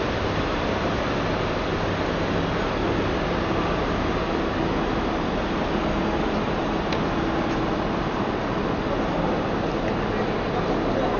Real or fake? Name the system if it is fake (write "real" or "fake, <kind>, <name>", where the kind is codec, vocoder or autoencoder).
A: real